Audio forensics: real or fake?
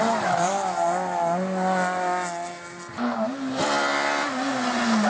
real